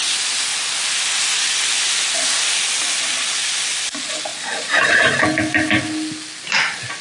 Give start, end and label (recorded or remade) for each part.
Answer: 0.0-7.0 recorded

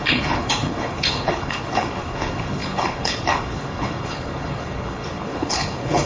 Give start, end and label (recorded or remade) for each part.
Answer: 0.0-6.1 remade

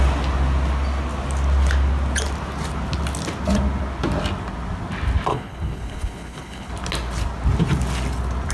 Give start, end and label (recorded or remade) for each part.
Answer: 0.0-5.3 recorded; 5.3-6.7 remade; 6.7-8.5 recorded

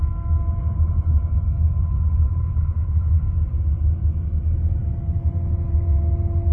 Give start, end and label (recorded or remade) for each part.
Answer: 0.0-0.6 recorded; 0.6-3.2 remade; 3.2-6.5 recorded